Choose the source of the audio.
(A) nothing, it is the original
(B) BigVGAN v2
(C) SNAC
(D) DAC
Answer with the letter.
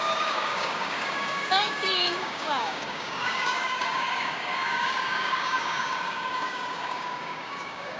D